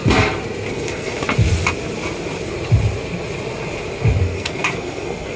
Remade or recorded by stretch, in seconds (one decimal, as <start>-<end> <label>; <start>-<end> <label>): 0.0-0.7 recorded; 0.7-1.2 remade; 1.2-4.2 recorded; 4.2-5.4 remade